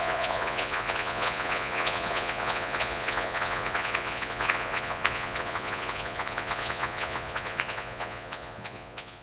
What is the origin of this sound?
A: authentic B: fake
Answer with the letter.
B